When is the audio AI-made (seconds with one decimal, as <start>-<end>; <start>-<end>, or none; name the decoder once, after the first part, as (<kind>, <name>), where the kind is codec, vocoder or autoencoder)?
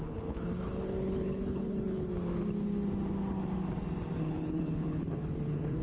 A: 0.0-2.1 (codec, HILCodec); 4.2-5.8